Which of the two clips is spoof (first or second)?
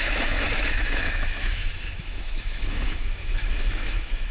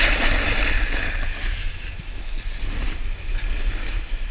first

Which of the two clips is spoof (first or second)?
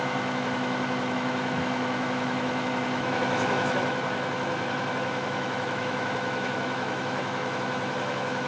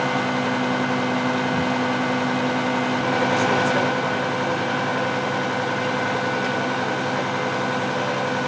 first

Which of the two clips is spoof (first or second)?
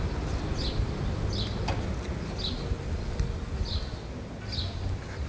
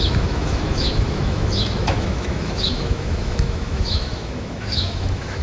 second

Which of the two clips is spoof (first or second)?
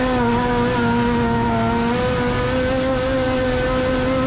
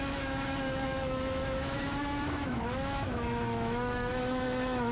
second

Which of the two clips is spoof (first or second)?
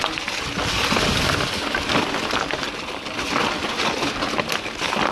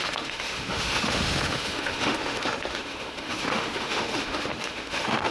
second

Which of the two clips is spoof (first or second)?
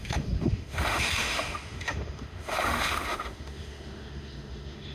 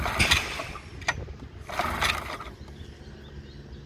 first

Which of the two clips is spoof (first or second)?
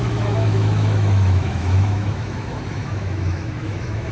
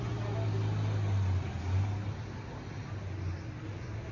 first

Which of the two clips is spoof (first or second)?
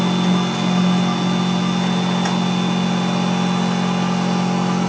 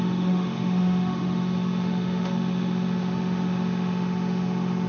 second